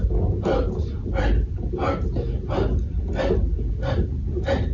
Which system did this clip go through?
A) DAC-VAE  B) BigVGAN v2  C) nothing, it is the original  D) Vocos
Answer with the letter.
C